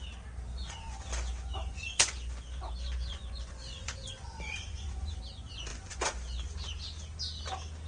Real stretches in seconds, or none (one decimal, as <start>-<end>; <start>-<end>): 0.0-0.5; 5.2-5.7; 6.4-7.9